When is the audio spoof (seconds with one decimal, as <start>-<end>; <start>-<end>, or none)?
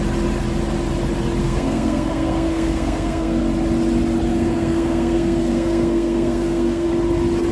1.4-3.4; 4.3-6.9